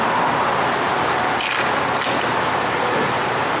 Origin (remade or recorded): recorded